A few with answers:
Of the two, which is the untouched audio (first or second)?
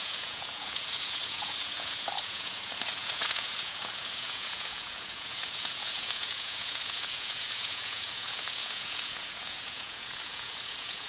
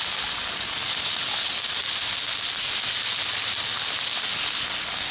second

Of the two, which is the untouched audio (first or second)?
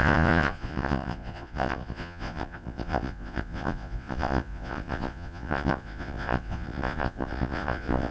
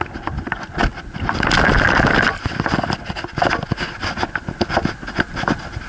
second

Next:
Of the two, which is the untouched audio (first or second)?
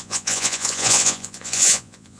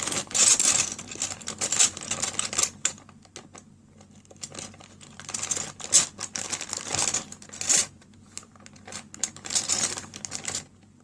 second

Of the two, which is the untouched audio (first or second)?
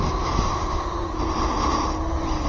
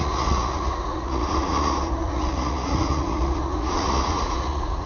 first